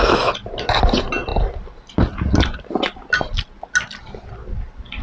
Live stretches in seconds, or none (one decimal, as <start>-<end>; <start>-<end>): 0.0-5.0